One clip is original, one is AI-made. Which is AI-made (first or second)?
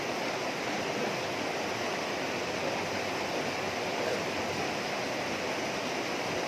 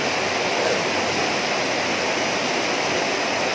first